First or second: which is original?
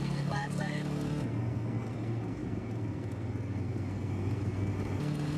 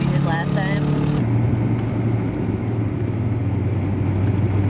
second